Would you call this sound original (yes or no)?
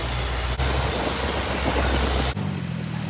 yes